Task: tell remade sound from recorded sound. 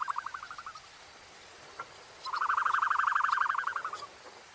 recorded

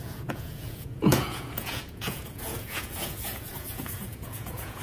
remade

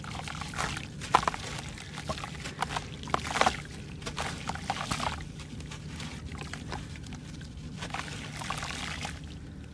recorded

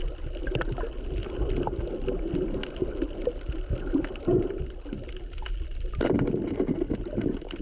recorded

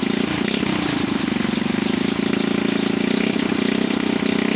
recorded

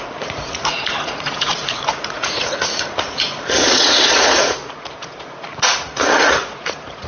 remade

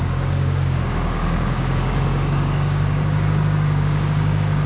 remade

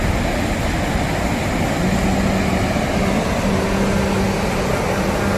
recorded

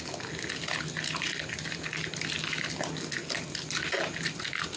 recorded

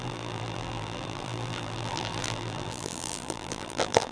remade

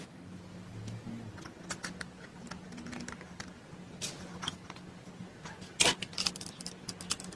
recorded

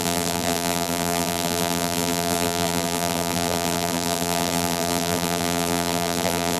remade